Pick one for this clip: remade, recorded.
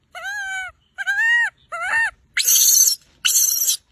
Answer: recorded